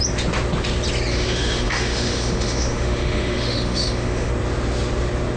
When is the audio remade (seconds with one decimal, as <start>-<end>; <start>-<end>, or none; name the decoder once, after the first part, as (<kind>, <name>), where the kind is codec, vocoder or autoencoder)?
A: 1.1-4.3 (autoencoder, DAC-VAE)